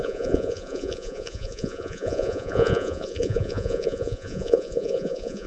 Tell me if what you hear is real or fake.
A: fake